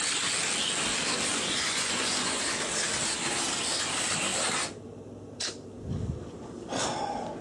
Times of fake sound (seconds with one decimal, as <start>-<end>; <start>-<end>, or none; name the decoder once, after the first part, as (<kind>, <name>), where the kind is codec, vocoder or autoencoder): 1.3-2.4 (vocoder, Vocos)